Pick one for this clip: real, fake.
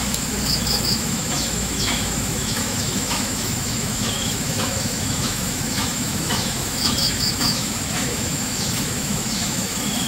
fake